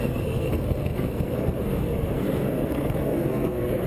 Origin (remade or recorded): remade